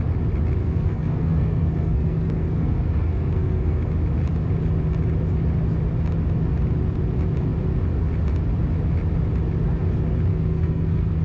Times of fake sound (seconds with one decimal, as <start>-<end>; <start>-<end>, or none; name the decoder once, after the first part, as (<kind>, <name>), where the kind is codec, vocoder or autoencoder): 0.6-3.9 (codec, SNAC); 10.3-11.2